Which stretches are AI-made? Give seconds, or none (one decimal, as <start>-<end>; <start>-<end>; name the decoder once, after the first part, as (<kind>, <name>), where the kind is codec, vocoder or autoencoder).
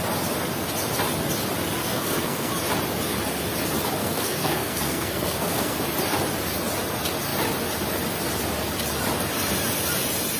1.8-2.5 (codec, SNAC); 4.0-5.8